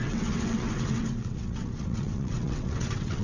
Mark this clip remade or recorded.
remade